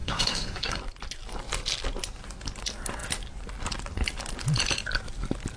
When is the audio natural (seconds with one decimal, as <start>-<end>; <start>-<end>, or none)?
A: 0.8-5.6